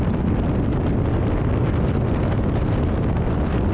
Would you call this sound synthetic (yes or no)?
no